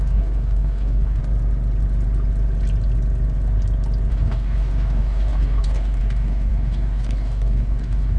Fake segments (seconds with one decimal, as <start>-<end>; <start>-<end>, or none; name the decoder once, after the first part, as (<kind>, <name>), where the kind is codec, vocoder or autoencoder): 0.0-1.2 (codec, DAC); 4.1-8.2